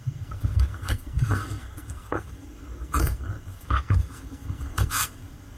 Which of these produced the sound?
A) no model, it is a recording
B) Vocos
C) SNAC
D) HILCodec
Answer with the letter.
C